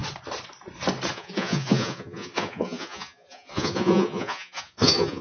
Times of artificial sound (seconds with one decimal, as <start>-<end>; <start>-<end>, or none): 1.1-5.2